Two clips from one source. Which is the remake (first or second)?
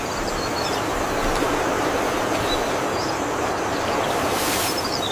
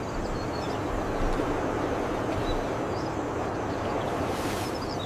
first